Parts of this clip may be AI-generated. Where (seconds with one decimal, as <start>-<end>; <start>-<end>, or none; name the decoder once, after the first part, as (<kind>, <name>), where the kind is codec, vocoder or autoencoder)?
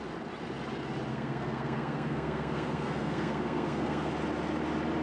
1.1-4.1 (codec, SNAC)